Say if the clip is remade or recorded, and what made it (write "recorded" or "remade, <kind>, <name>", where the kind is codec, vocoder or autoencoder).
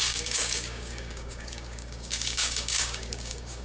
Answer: remade, codec, DAC